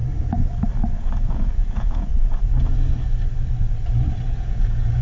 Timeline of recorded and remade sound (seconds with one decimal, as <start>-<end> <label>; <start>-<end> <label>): 0.0-0.9 recorded; 0.9-2.1 remade; 2.1-4.4 recorded; 4.4-5.0 remade